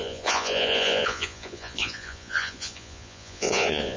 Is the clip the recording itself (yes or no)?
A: no